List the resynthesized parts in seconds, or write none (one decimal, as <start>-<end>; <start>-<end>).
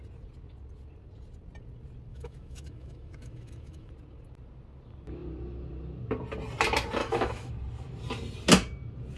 2.1-3.9; 7.0-7.5